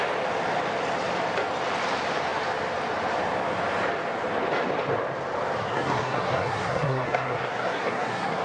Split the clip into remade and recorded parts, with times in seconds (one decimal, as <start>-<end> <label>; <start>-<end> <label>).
0.0-5.6 recorded; 5.6-8.4 remade